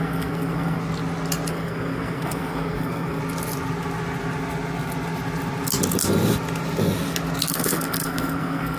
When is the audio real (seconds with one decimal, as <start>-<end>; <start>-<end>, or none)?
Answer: 0.8-1.5; 3.2-7.5